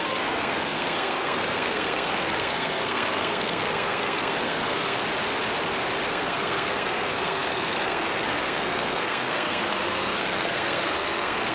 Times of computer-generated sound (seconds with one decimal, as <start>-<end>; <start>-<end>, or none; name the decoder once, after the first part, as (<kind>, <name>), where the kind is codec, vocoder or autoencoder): 0.0-5.0 (codec, SNAC); 6.1-11.5